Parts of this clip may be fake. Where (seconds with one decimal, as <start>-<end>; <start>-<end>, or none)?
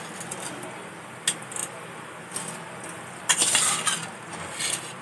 none